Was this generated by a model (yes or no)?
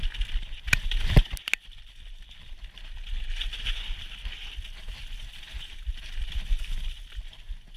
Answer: no